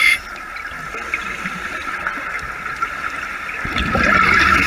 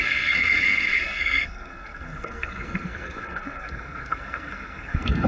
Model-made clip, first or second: second